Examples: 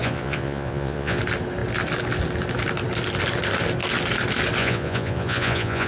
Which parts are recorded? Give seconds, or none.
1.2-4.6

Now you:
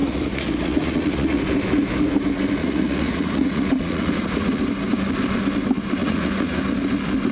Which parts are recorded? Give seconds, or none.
1.4-2.6; 4.6-6.0; 6.6-7.3

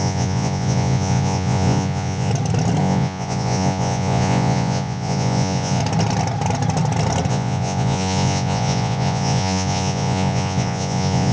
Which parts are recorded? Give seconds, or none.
2.3-2.8; 5.8-7.3

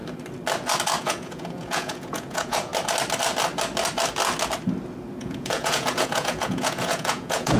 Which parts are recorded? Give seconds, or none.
0.0-1.0; 2.7-5.2

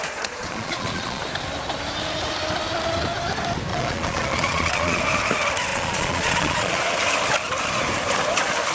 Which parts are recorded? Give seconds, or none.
1.2-3.7; 5.0-5.7; 6.9-8.7

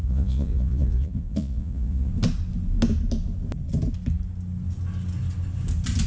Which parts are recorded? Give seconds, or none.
2.1-6.1

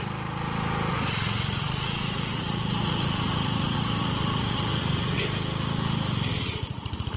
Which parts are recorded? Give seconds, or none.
0.0-0.9; 5.2-6.3